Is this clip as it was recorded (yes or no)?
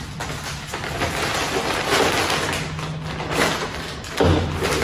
yes